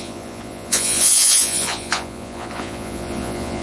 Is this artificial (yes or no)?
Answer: yes